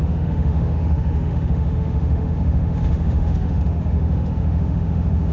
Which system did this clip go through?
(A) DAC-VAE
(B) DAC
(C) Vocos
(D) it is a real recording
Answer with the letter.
A